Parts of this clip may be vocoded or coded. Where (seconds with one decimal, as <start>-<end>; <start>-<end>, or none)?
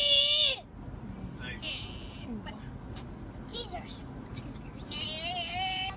none